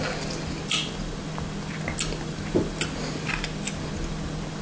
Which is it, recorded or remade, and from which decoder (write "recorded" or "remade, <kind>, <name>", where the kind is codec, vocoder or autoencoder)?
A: recorded